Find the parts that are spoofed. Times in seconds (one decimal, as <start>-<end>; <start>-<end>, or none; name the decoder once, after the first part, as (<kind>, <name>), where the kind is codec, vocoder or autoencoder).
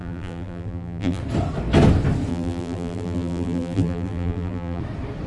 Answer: 0.0-1.2 (vocoder, BigVGAN v2); 2.3-4.8